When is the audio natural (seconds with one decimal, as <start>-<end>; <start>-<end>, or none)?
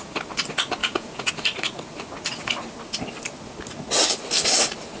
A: 0.0-0.8; 1.3-5.0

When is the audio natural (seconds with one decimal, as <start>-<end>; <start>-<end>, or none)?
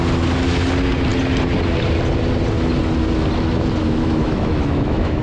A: 0.0-3.8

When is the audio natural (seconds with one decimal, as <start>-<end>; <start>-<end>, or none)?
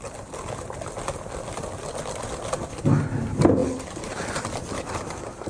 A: 0.0-5.5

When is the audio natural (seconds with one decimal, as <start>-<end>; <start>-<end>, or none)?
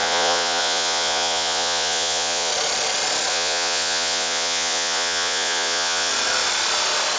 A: 2.5-3.3; 6.1-7.2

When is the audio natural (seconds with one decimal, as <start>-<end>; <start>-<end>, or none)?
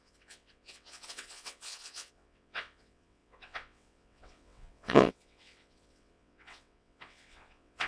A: none